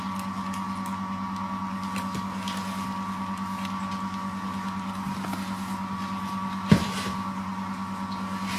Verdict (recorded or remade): recorded